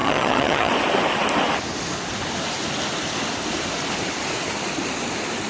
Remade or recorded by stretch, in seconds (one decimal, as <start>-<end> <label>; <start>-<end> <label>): 0.0-0.7 remade; 0.7-5.5 recorded